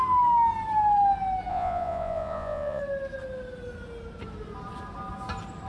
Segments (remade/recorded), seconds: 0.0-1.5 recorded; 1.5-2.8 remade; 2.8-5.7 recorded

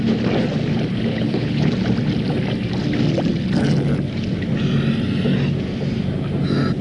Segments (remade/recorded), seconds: 0.0-1.1 recorded; 1.1-1.7 remade; 1.7-6.8 recorded

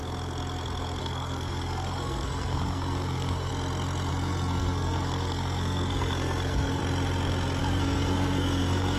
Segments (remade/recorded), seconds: 0.0-1.0 recorded; 1.0-3.5 remade; 3.5-4.1 recorded; 4.1-6.8 remade; 6.8-7.6 recorded; 7.6-9.0 remade

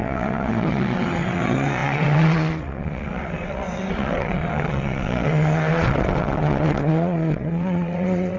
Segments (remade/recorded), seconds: 0.0-8.4 remade

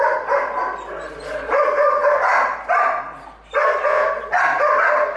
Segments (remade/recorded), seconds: 0.0-5.2 recorded